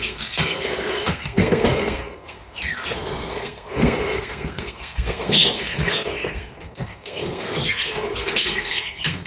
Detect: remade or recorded remade